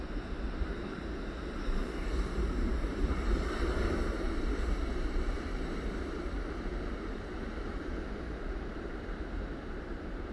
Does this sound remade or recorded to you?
remade